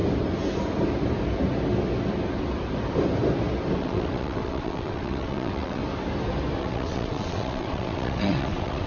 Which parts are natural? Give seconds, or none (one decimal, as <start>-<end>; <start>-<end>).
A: 0.0-3.8; 5.8-6.6